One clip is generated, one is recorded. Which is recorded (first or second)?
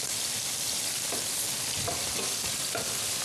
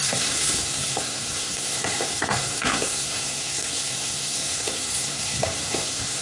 first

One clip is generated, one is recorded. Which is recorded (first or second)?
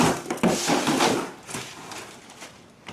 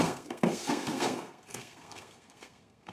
first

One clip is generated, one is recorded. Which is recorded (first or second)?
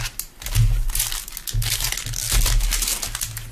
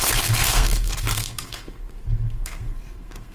first